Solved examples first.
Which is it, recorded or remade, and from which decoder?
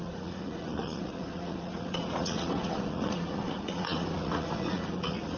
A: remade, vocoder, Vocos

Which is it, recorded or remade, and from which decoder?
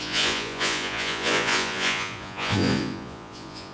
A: remade, vocoder, Vocos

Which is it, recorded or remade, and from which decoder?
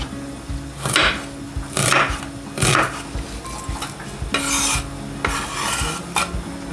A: recorded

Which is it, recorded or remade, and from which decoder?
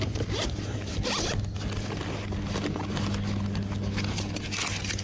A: recorded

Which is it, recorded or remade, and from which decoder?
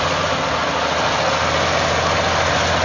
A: recorded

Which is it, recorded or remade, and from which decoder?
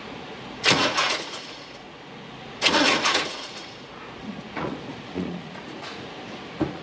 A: remade, vocoder, Vocos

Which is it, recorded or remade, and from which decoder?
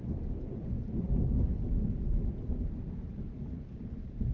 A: recorded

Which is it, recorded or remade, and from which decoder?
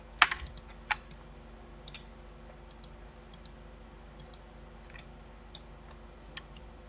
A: recorded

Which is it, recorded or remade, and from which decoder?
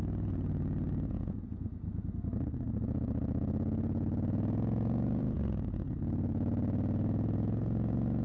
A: remade, vocoder, Vocos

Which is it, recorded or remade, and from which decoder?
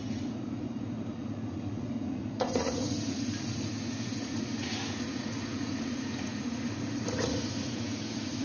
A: remade, vocoder, Vocos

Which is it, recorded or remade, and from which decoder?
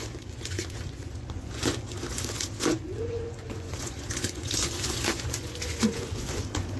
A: remade, vocoder, Vocos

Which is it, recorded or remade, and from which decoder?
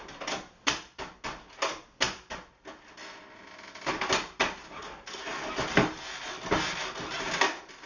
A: recorded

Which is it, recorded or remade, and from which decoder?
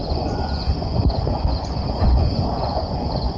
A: remade, vocoder, Vocos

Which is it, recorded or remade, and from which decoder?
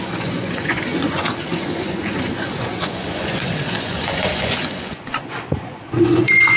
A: remade, vocoder, Vocos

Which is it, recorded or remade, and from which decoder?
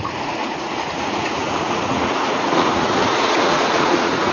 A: remade, vocoder, Vocos